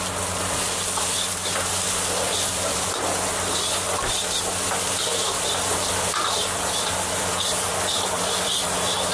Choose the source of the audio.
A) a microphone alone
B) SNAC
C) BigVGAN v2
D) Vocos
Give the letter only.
C